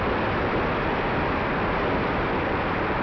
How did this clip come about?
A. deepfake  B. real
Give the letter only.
B